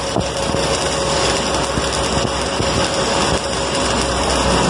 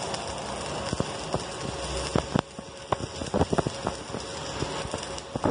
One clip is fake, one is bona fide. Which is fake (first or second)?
first